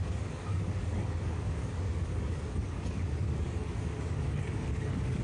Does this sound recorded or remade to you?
remade